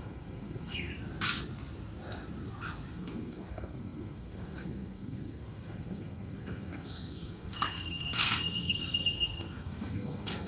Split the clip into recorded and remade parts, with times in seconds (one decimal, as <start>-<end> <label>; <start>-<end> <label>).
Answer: 0.0-0.9 remade; 0.9-2.9 recorded; 2.9-10.5 remade